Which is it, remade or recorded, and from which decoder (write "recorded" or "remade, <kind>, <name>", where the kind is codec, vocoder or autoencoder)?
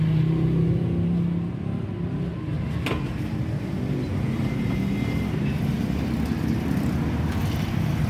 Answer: recorded